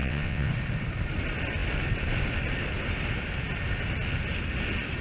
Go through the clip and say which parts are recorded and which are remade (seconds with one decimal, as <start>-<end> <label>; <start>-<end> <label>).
0.0-0.5 remade; 0.5-5.0 recorded